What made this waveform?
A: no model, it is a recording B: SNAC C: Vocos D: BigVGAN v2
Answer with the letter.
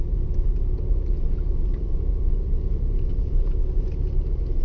A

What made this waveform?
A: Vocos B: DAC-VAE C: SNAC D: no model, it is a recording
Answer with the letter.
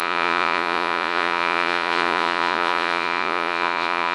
A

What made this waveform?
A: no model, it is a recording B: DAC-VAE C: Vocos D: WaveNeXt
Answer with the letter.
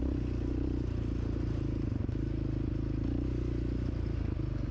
A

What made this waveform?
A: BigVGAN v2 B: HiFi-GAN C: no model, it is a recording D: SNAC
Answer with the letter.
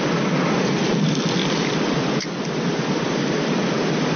A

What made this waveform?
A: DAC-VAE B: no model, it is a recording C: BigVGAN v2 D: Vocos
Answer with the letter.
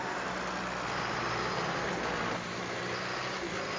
B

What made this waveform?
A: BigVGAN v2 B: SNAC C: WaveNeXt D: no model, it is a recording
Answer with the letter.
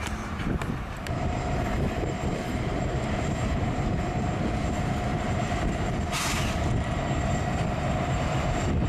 A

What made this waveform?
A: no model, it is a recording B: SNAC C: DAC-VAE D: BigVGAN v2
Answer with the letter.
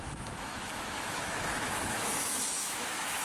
C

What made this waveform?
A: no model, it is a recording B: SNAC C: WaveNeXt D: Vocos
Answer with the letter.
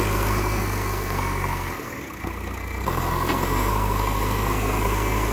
B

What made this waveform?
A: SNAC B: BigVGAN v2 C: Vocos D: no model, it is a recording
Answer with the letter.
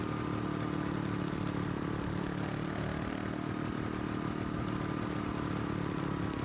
D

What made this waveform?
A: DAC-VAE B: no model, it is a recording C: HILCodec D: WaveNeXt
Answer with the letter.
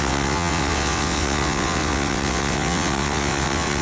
D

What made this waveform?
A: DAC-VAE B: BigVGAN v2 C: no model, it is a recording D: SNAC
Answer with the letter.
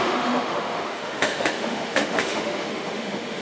A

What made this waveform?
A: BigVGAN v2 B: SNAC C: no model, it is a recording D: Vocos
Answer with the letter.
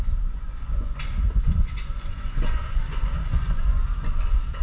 D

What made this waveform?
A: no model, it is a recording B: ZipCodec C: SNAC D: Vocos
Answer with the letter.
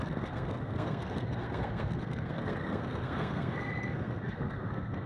C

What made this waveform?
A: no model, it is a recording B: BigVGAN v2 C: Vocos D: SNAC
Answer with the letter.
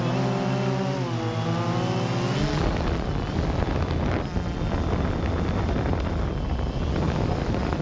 A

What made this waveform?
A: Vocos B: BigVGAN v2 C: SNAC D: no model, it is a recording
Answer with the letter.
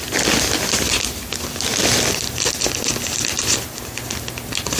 D